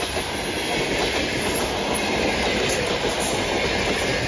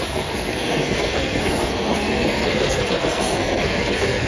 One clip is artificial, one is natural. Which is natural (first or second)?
first